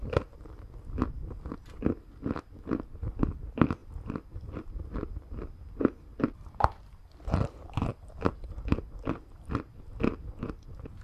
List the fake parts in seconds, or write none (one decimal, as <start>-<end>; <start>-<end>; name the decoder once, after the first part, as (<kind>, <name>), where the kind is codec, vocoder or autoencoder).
none